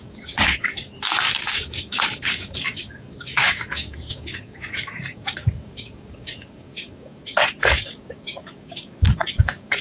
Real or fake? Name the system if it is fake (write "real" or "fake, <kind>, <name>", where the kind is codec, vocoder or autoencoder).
fake, codec, DAC